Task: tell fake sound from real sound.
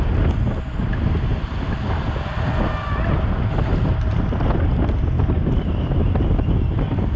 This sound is real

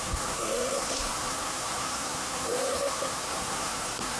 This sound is fake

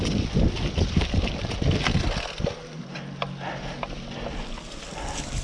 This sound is real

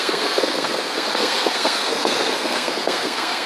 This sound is fake